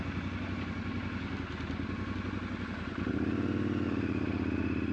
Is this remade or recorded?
recorded